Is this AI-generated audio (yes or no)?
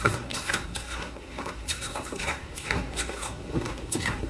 yes